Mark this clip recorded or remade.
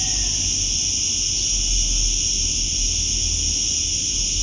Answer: recorded